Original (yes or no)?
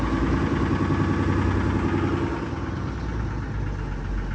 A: yes